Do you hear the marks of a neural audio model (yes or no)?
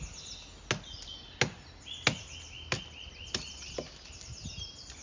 no